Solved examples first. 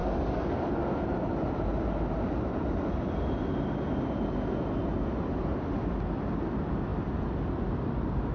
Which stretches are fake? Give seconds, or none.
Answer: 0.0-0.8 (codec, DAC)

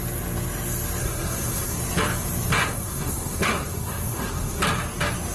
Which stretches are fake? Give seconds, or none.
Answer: 1.0-1.8 (codec, SNAC); 2.6-4.6